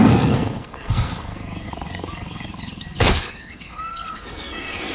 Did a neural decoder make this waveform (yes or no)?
yes